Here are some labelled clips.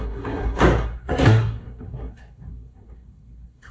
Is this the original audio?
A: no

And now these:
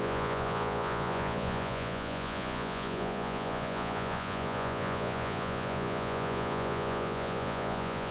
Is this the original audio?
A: no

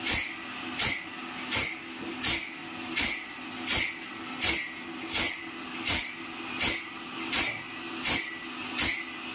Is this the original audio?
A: yes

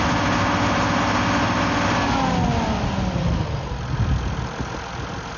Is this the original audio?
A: yes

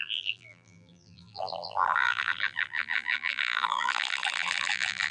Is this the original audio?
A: no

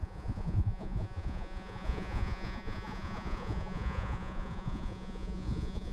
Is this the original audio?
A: no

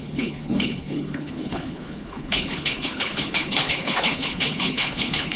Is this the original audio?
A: no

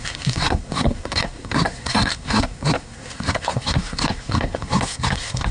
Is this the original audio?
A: no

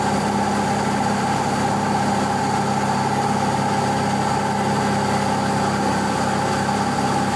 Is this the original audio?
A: yes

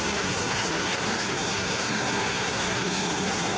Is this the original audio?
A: no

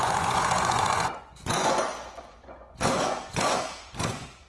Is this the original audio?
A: no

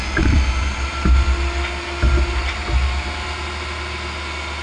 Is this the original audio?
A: yes